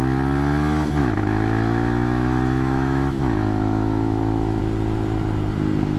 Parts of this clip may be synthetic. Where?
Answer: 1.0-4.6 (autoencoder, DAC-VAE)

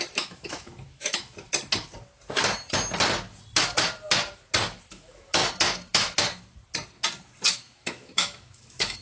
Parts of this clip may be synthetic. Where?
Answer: 0.0-1.5 (autoencoder, DAC-VAE); 4.9-5.4; 7.5-9.0

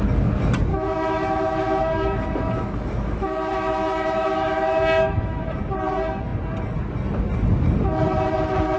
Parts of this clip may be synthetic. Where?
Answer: 0.7-5.4 (autoencoder, DAC-VAE)

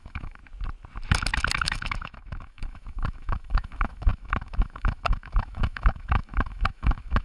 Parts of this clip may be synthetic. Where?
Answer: 0.0-0.4 (autoencoder, DAC-VAE); 1.6-7.2

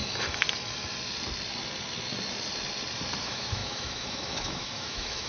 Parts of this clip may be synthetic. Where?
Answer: 3.2-5.3 (autoencoder, DAC-VAE)